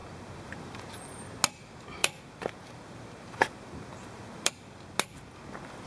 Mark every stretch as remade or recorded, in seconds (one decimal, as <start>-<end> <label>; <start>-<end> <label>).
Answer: 0.0-0.8 remade; 0.8-2.0 recorded; 2.0-4.5 remade; 4.5-5.9 recorded